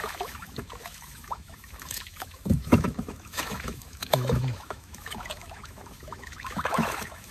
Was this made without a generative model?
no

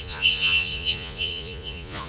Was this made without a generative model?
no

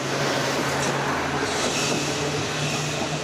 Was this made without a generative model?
yes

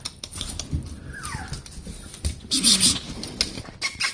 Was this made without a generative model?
yes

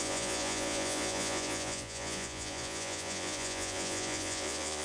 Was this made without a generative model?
no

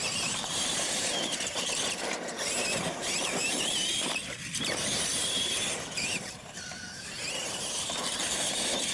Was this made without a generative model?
no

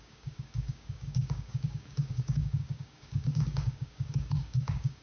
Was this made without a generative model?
no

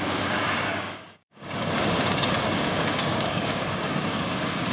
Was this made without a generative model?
no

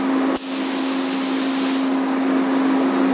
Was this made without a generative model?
yes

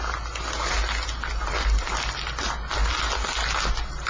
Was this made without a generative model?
yes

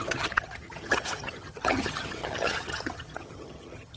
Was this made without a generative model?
no